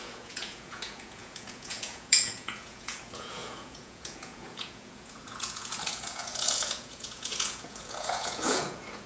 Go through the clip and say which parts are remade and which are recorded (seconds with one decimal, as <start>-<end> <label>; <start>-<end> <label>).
0.0-9.1 remade